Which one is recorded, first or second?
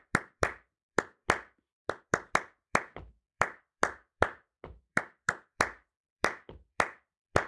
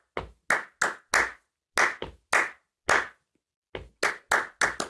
second